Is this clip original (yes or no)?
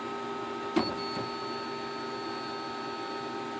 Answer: yes